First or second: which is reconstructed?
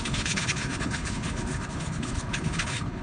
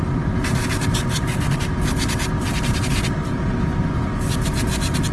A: first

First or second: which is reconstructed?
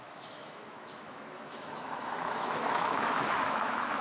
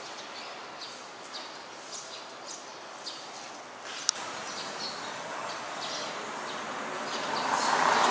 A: first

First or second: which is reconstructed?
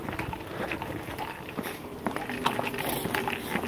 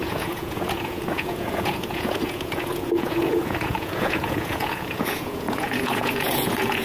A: second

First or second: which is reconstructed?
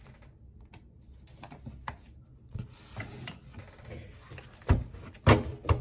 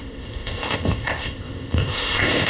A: second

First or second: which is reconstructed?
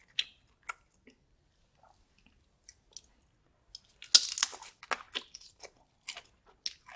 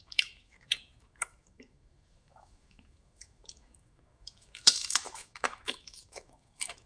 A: second